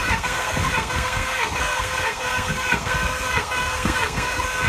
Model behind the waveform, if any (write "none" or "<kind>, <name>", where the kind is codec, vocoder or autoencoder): codec, SNAC